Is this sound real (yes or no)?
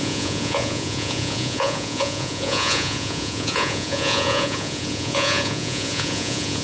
no